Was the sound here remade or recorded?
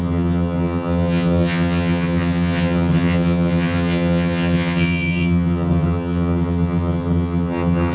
remade